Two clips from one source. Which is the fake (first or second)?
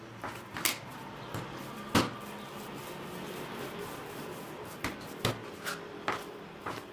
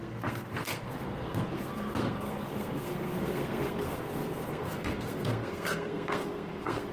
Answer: second